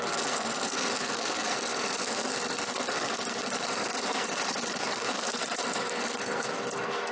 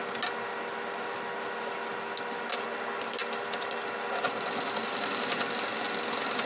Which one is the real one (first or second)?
second